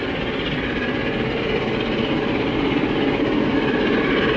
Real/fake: real